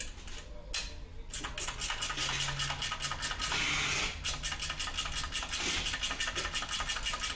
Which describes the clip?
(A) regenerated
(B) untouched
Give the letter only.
B